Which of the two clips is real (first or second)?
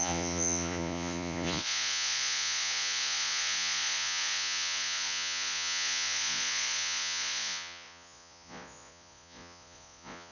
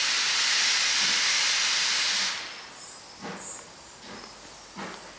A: second